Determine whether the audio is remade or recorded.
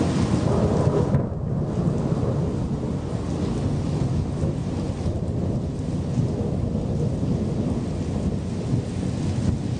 recorded